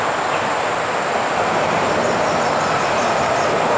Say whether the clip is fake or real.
real